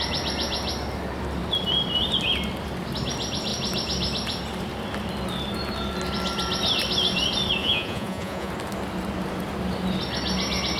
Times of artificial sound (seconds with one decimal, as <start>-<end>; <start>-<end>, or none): 7.6-8.5